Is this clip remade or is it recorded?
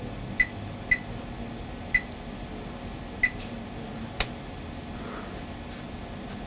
recorded